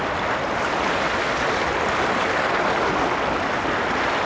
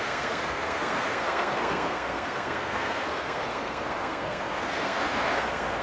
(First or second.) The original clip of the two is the first